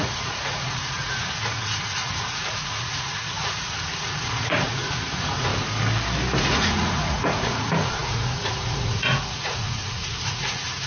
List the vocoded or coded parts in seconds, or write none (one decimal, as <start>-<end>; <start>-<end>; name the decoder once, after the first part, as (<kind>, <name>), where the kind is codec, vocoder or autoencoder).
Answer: 0.0-5.5 (vocoder, Vocos); 6.4-10.9